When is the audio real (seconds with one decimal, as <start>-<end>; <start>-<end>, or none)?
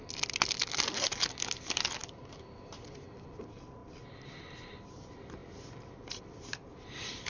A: 0.0-7.3